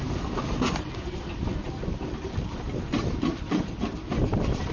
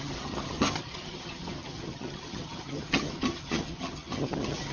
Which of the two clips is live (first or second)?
first